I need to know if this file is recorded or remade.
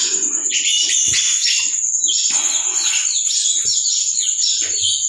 remade